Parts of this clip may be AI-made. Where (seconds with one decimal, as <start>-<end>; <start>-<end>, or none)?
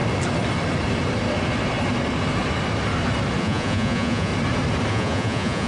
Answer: 3.4-4.3; 4.9-5.7